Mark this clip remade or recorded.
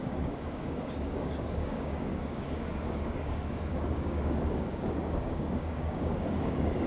remade